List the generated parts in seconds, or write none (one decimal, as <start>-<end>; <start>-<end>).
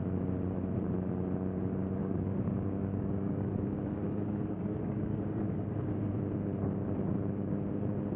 2.0-6.0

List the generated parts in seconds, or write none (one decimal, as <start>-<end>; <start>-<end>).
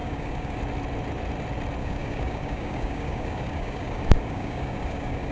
0.0-0.6; 1.8-5.3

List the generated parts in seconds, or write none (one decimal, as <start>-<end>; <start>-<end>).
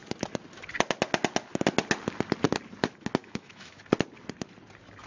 3.2-3.8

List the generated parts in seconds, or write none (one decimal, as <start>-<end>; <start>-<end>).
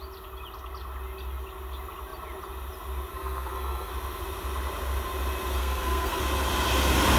3.1-3.9; 5.6-6.2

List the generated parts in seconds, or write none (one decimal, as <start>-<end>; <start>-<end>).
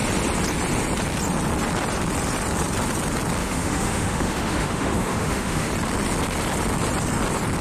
3.4-5.7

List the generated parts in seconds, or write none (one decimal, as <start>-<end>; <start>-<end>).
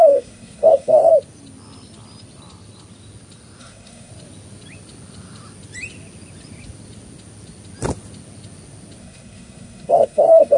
0.0-1.1; 3.6-4.1; 9.0-10.6